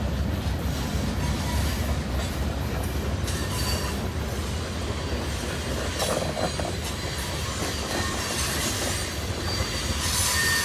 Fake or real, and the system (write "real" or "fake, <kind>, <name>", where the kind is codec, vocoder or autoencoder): real